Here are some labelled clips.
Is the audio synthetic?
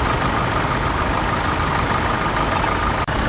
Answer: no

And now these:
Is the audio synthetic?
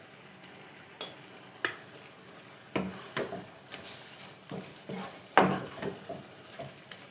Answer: no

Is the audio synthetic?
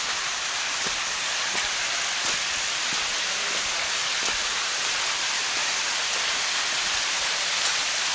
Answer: no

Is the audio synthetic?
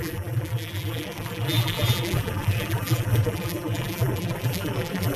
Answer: yes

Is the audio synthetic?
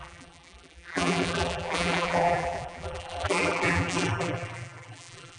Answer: yes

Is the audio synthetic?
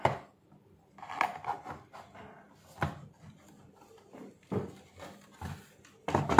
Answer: yes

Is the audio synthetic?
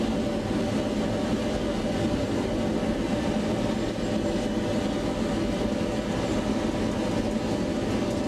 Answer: no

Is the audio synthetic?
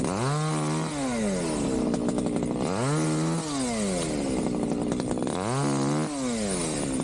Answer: no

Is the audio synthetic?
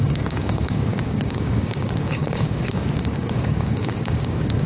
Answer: yes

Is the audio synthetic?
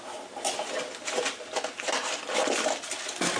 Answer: no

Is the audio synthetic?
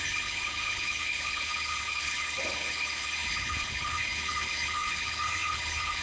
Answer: yes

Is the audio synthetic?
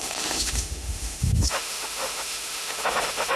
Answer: yes